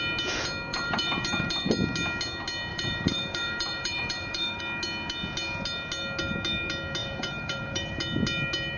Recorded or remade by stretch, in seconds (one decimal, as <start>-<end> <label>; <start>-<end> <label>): 0.0-0.7 recorded; 0.7-1.7 remade; 1.7-2.7 recorded; 2.7-4.6 remade; 4.6-7.0 recorded; 7.0-8.0 remade; 8.0-8.8 recorded